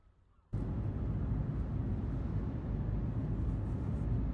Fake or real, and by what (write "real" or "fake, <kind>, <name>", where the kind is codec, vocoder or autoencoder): real